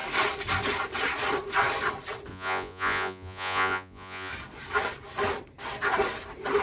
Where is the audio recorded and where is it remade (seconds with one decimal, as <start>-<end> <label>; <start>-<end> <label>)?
0.0-2.3 recorded; 2.3-4.3 remade; 4.3-6.6 recorded